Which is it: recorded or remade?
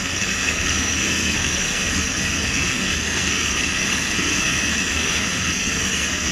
remade